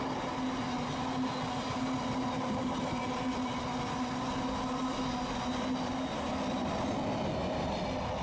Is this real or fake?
real